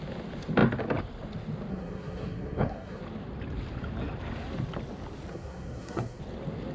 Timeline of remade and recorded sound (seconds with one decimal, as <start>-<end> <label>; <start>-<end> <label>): 0.0-1.7 recorded; 1.7-3.0 remade; 3.0-5.3 recorded; 5.3-6.2 remade; 6.2-6.7 recorded